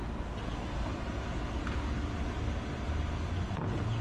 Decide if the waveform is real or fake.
real